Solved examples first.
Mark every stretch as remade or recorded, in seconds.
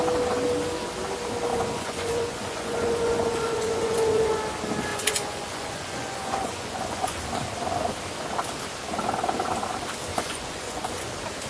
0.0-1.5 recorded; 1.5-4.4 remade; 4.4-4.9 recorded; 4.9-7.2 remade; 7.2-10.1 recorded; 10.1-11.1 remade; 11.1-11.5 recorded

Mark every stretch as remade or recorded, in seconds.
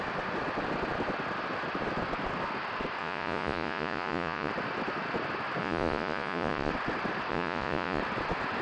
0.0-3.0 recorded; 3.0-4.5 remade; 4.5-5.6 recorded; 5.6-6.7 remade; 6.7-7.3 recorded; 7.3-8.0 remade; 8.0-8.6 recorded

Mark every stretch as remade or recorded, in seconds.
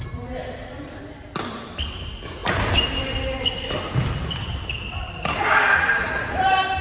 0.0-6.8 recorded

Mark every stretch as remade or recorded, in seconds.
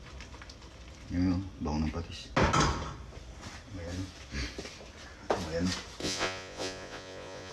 0.0-6.0 recorded; 6.0-7.5 remade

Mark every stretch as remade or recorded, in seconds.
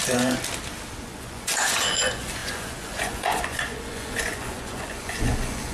0.0-1.0 recorded; 1.0-5.7 remade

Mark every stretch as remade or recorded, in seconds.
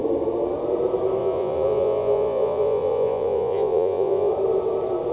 0.0-1.2 recorded; 1.2-4.3 remade; 4.3-5.1 recorded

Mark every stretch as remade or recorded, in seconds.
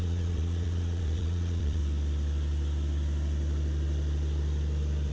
0.0-1.8 remade; 1.8-5.1 recorded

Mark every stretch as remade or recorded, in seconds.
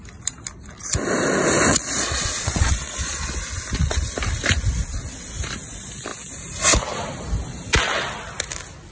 0.0-1.7 recorded; 1.7-3.4 remade; 3.4-8.9 recorded